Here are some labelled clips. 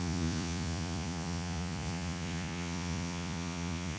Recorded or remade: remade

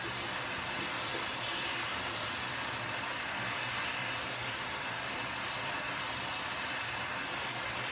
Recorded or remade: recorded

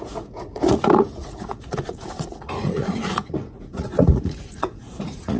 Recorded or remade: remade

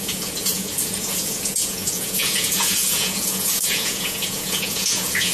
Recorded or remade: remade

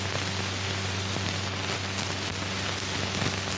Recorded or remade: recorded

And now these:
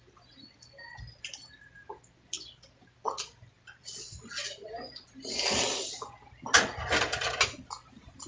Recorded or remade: recorded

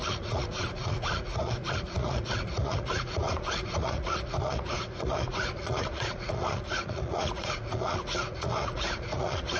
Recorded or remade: remade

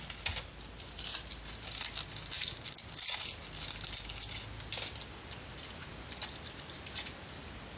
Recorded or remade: recorded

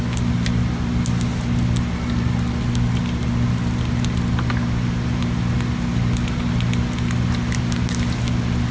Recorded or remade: recorded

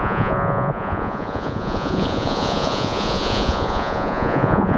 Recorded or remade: remade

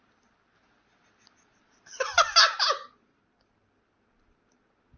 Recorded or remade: recorded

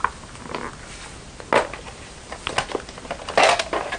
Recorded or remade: recorded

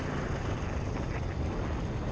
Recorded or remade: recorded